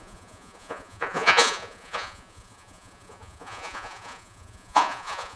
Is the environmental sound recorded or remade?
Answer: remade